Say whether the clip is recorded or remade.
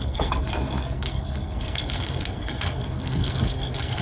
remade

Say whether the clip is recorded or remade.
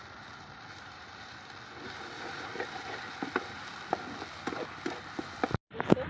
recorded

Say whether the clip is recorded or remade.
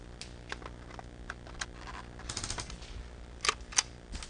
recorded